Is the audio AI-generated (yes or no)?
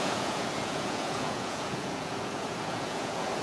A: yes